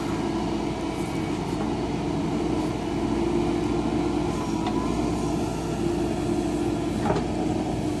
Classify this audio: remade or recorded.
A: recorded